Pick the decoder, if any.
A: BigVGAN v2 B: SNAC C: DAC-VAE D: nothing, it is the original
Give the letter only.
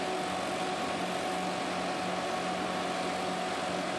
D